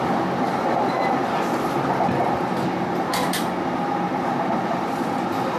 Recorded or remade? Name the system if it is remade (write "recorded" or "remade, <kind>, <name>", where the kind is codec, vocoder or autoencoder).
recorded